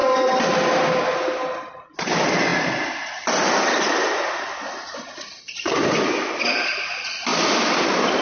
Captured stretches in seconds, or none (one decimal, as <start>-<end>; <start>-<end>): 0.0-8.2